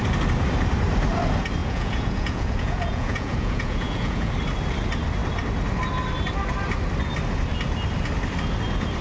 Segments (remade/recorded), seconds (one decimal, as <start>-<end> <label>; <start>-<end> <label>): 0.0-1.6 recorded; 1.6-4.3 remade; 4.3-9.0 recorded